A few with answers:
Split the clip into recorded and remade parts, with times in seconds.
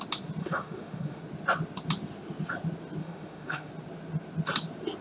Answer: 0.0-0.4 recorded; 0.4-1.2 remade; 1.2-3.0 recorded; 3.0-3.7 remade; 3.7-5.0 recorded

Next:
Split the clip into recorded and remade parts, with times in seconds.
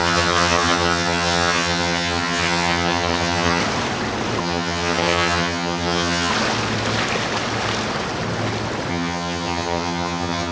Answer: 0.0-3.6 remade; 3.6-4.4 recorded; 4.4-6.3 remade; 6.3-8.9 recorded; 8.9-10.5 remade